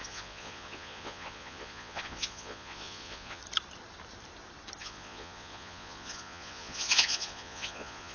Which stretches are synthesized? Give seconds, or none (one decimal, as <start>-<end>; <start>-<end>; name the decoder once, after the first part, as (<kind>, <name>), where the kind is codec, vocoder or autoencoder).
0.0-3.4 (vocoder, Vocos); 4.8-8.1